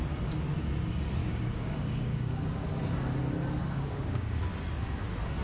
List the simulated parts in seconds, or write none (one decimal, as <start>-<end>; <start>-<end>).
1.2-2.7; 3.6-4.4